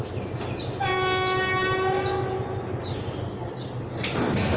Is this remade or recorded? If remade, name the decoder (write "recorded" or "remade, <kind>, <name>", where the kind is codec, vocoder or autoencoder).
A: recorded